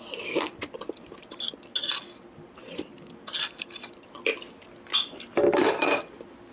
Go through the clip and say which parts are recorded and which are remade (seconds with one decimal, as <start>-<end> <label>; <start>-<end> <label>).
0.0-6.5 recorded